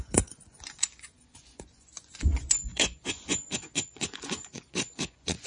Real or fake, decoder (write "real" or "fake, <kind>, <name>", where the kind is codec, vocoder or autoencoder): fake, vocoder, Vocos